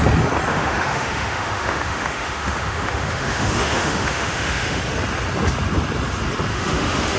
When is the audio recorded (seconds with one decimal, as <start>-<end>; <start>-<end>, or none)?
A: 0.0-0.5; 4.8-6.5